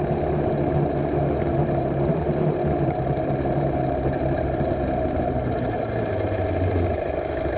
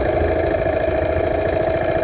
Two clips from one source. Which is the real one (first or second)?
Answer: second